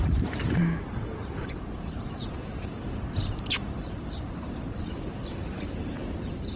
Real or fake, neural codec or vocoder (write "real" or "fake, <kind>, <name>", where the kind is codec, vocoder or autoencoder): fake, vocoder, BigVGAN v2